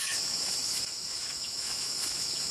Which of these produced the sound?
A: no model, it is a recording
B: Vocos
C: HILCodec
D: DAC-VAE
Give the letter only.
D